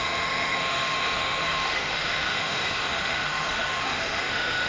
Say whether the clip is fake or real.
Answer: fake